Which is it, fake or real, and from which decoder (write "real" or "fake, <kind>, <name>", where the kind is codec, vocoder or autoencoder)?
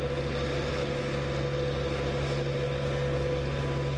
real